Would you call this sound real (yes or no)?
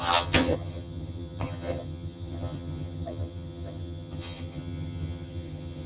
no